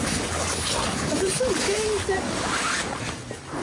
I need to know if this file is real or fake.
real